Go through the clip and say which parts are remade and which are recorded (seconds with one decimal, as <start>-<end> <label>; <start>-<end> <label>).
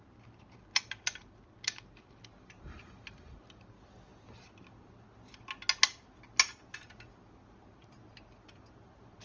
0.0-9.2 recorded